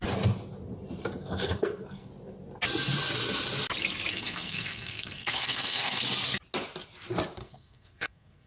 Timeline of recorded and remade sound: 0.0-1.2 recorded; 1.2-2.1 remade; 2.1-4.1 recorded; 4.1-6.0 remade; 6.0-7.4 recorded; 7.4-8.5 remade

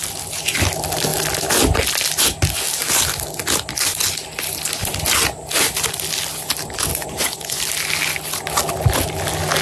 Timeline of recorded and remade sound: 0.0-6.9 recorded; 6.9-7.6 remade; 7.6-9.6 recorded

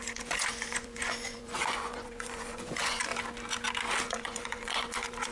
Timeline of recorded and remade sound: 0.0-3.1 remade; 3.1-4.0 recorded; 4.0-5.3 remade

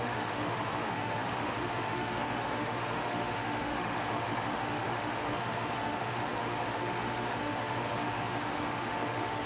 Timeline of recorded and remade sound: 0.0-9.5 remade

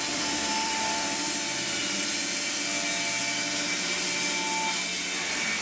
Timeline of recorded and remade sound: 0.0-1.8 remade; 1.8-5.6 recorded

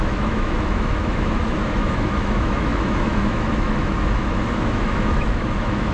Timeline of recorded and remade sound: 0.0-5.9 remade